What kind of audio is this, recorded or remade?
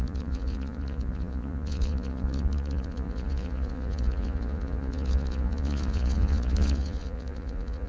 remade